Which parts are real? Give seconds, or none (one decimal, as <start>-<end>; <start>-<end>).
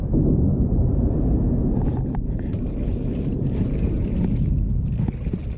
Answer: 0.0-0.5; 1.4-1.9; 5.0-5.6